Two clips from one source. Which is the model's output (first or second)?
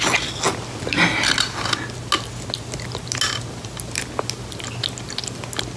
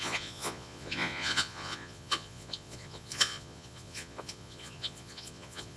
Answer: second